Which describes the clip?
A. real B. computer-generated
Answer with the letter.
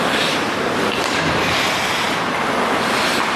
A